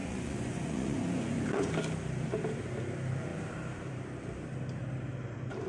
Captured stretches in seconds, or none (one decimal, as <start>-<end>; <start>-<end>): 1.7-5.7